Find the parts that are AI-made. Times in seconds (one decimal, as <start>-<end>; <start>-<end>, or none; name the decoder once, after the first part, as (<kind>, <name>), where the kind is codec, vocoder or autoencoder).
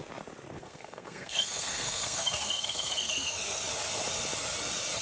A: 0.6-3.6 (codec, SNAC)